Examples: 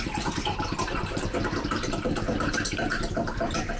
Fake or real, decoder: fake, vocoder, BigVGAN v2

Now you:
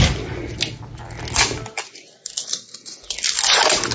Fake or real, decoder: real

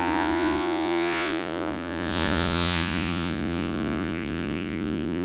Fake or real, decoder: fake, vocoder, Vocos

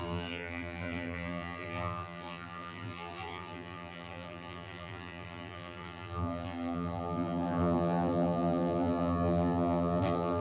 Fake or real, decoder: fake, vocoder, BigVGAN v2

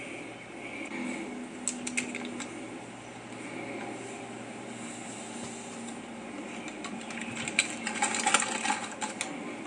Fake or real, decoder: real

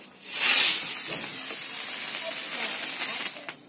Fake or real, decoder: real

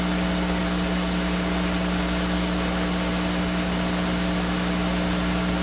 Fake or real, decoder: real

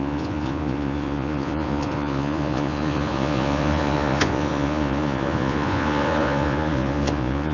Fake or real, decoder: fake, vocoder, Vocos